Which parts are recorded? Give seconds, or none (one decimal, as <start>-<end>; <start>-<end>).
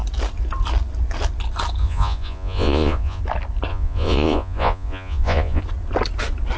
0.0-1.8; 3.2-3.7; 5.6-6.6